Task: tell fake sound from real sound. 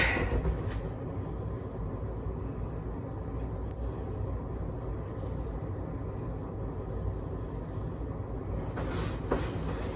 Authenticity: real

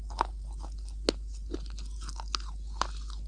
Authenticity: real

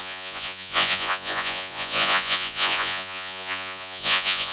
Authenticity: fake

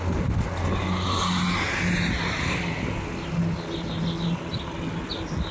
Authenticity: real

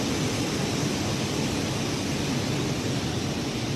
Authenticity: real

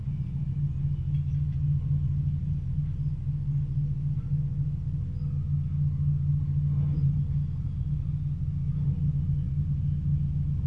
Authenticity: real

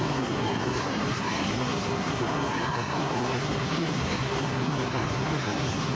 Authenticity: fake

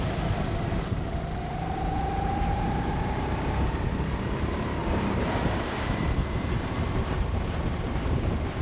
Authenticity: fake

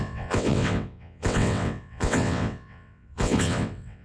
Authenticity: fake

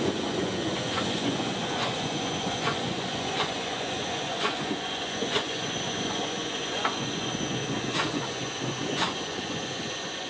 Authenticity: fake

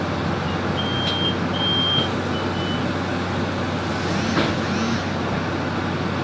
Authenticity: real